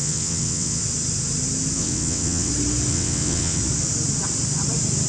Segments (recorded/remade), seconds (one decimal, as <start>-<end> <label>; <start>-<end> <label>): 0.0-0.8 remade; 0.8-1.8 recorded; 1.8-2.5 remade; 2.5-2.9 recorded; 2.9-3.6 remade; 3.6-5.1 recorded